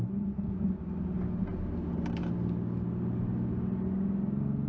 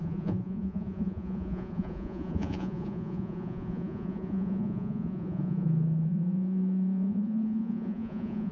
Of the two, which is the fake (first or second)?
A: second